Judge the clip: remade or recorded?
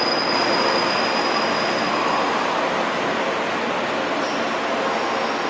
recorded